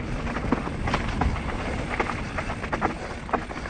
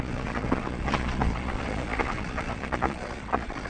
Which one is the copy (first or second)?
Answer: second